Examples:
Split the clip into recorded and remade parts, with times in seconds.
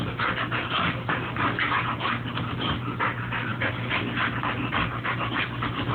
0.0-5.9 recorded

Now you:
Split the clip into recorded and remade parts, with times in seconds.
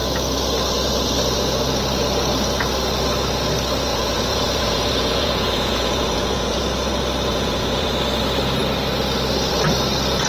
0.0-3.9 recorded; 3.9-6.6 remade; 6.6-7.3 recorded; 7.3-7.9 remade; 7.9-10.3 recorded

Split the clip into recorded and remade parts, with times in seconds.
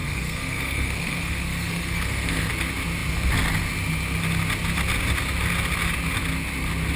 0.0-2.5 remade; 2.5-7.0 recorded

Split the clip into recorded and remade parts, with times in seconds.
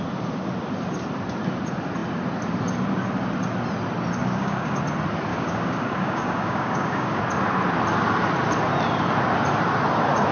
0.0-4.2 recorded; 4.2-4.8 remade; 4.8-5.3 recorded; 5.3-7.2 remade; 7.2-10.3 recorded